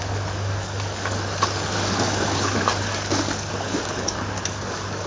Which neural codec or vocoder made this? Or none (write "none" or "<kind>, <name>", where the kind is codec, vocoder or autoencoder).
codec, DAC